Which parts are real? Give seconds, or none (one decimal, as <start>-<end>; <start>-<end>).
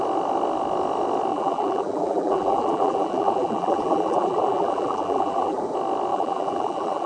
0.0-1.3; 5.6-6.1